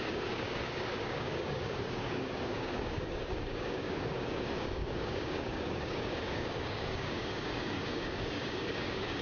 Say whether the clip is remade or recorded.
remade